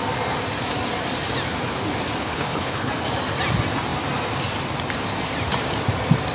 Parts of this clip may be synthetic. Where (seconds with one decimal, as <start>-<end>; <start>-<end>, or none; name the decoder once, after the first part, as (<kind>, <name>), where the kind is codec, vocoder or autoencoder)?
2.2-2.9 (codec, HILCodec)